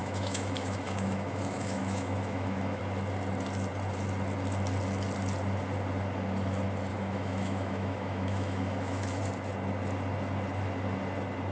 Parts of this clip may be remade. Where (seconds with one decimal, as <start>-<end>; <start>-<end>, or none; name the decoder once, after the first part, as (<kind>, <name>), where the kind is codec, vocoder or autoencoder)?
0.0-2.8 (autoencoder, DAC-VAE); 6.9-9.2